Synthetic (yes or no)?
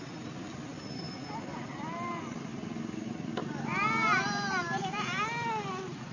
no